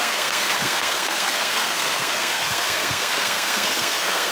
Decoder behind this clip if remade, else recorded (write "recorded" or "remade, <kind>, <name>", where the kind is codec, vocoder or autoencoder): remade, codec, SNAC